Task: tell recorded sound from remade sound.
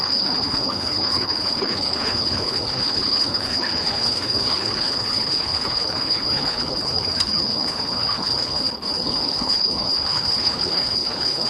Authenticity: remade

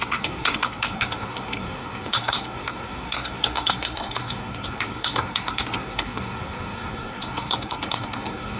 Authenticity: remade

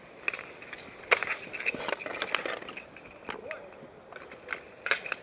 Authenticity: recorded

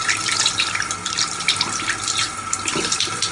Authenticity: recorded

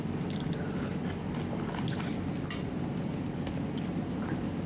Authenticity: recorded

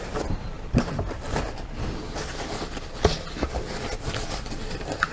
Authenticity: recorded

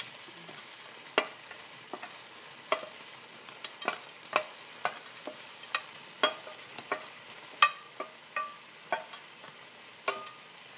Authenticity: recorded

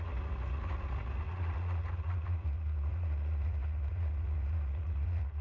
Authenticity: remade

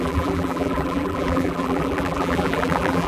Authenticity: remade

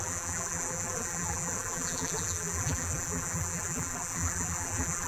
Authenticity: remade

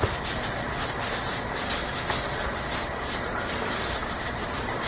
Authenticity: recorded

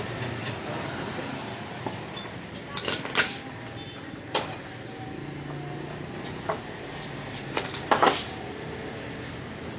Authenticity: recorded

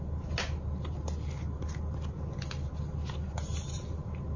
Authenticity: recorded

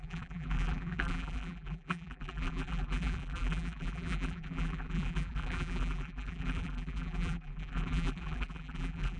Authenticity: remade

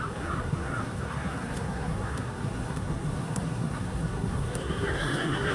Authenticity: remade